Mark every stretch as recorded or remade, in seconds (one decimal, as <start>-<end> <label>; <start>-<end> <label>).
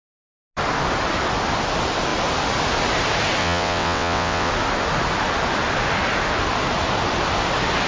0.0-3.4 recorded; 3.4-4.5 remade; 4.5-7.9 recorded